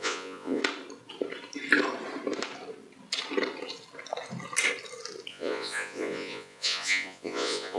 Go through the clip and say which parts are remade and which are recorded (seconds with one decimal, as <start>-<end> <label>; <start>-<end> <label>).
0.0-0.6 remade; 0.6-5.3 recorded; 5.3-7.8 remade